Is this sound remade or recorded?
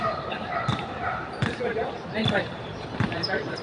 remade